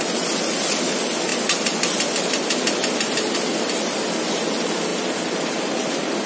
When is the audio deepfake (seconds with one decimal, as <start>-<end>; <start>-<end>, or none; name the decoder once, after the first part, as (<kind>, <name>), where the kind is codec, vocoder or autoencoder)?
none